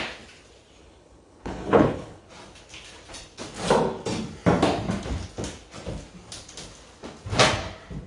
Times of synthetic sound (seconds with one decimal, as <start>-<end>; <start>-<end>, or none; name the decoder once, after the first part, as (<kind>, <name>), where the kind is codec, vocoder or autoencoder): 0.8-2.3 (codec, HILCodec)